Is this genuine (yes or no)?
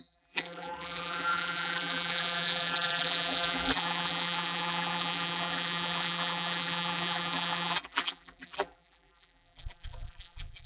no